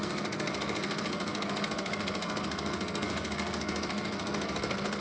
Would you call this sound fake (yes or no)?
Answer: yes